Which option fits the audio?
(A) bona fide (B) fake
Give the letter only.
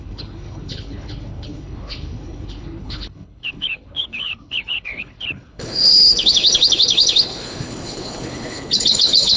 B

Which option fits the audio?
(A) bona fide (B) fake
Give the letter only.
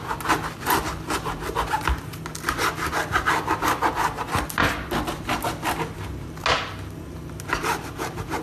A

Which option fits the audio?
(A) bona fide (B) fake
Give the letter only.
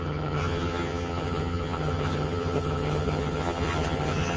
B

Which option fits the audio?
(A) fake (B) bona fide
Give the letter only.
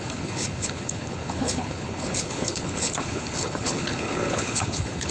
A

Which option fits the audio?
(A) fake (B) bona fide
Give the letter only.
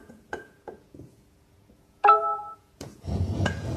A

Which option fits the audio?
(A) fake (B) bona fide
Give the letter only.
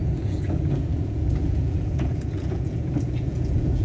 A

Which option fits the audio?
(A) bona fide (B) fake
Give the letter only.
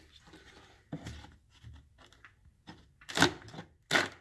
A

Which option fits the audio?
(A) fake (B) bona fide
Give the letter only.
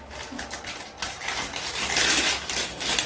B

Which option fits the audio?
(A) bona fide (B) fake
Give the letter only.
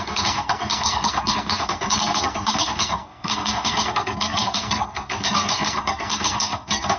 B